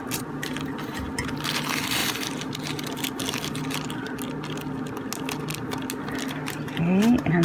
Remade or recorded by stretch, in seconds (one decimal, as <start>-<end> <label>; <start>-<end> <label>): 0.0-7.4 recorded